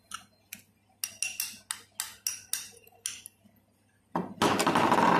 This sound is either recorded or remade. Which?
recorded